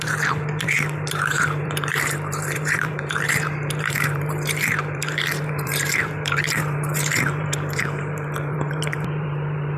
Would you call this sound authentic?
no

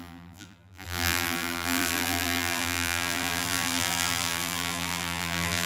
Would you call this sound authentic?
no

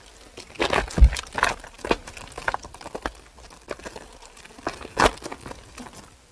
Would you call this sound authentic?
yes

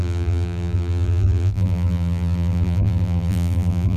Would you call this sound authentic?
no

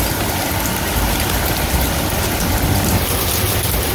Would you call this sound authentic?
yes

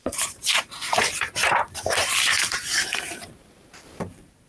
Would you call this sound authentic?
no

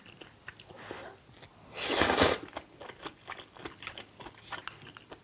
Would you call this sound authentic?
yes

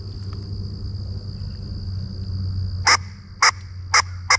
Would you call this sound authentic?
yes